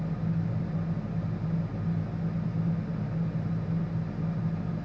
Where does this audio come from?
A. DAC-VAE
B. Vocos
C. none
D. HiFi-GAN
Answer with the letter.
C